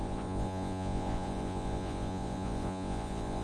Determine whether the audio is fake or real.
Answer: fake